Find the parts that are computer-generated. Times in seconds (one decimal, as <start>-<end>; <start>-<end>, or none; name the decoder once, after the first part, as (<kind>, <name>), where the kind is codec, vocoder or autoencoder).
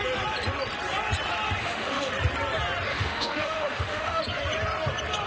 1.6-2.1 (autoencoder, DAC-VAE); 2.9-4.2